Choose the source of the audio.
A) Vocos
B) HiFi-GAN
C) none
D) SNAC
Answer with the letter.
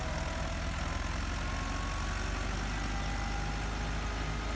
C